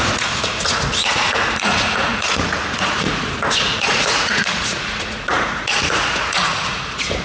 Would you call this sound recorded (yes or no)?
no